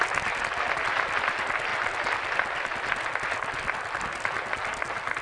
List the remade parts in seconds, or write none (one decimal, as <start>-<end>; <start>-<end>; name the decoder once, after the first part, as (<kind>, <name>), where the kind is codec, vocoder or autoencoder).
none